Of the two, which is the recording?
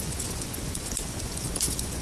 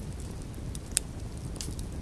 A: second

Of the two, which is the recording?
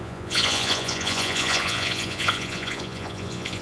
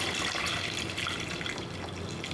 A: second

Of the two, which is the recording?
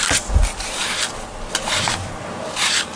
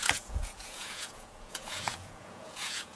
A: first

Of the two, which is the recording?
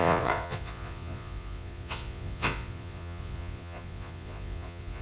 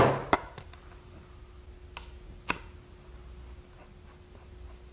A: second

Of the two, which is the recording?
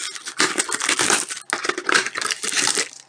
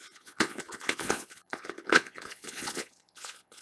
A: first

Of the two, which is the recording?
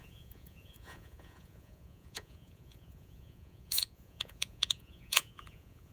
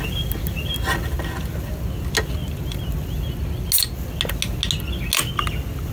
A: second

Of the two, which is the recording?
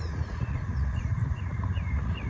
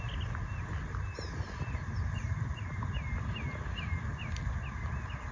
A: second